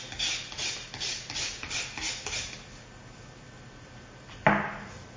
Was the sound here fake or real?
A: real